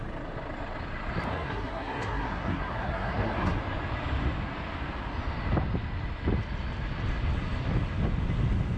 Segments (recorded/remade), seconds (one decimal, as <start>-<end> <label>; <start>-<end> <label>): 0.0-1.3 recorded; 1.3-3.6 remade; 3.6-8.8 recorded